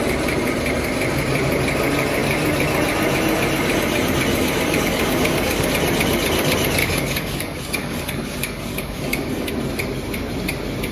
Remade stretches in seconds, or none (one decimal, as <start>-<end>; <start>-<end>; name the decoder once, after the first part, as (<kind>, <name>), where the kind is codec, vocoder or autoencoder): 4.3-5.7 (codec, DAC); 6.8-9.5